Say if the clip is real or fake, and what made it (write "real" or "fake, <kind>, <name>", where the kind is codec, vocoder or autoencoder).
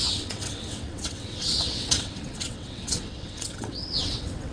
fake, vocoder, WaveNeXt